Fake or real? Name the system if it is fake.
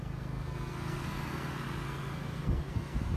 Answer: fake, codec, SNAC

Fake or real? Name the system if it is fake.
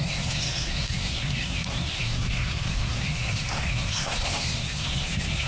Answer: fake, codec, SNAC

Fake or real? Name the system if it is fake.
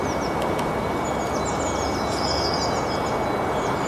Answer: real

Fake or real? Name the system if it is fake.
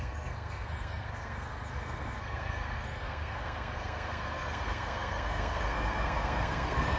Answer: fake, codec, SNAC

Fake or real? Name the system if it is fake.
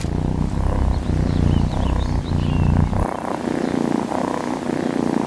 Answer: real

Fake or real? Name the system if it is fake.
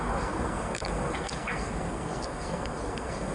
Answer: fake, codec, SNAC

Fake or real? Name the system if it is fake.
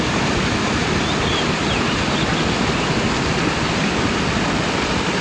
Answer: real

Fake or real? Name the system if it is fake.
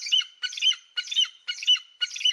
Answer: real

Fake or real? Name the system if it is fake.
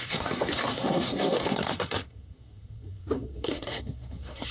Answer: fake, codec, SNAC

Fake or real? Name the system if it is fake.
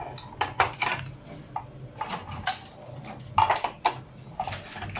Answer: real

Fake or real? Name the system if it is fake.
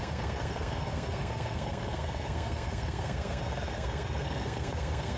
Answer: fake, codec, SNAC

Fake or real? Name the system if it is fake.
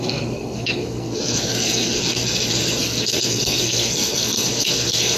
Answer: fake, codec, SNAC